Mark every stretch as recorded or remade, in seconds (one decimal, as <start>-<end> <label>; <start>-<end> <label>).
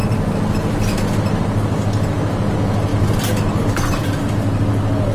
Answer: 0.0-5.1 recorded